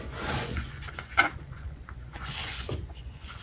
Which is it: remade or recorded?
remade